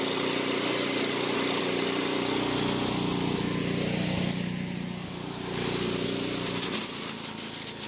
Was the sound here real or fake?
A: real